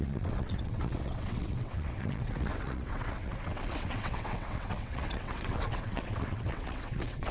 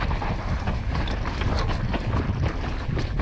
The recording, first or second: second